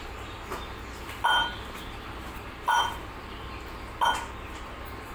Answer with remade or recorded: recorded